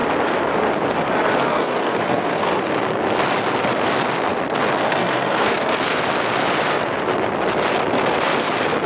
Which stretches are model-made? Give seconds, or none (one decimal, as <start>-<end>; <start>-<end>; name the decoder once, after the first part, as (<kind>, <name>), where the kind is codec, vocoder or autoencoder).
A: 1.5-2.6 (codec, SNAC); 4.9-6.0